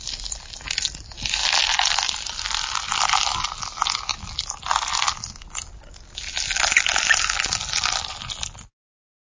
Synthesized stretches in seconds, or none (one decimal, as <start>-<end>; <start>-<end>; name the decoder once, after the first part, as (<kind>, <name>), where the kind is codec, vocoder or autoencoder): none